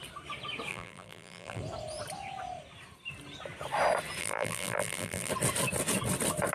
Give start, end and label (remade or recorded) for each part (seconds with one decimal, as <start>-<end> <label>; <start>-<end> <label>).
0.0-0.7 recorded; 0.7-1.6 remade; 1.6-4.2 recorded; 4.2-5.3 remade; 5.3-6.5 recorded